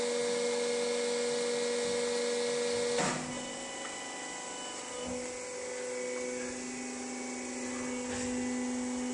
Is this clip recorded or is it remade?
recorded